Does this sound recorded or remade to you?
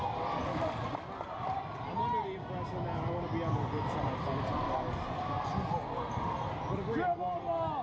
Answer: recorded